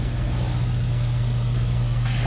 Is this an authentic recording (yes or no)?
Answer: no